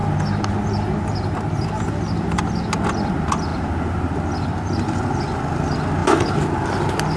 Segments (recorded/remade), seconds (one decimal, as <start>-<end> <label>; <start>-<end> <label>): 0.0-7.2 recorded